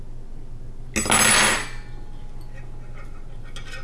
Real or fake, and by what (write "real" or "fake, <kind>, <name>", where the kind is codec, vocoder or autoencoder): real